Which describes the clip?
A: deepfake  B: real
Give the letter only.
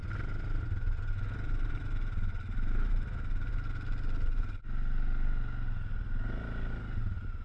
B